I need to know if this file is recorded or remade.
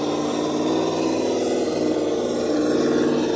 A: recorded